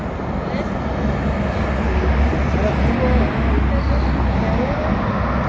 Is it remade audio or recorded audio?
recorded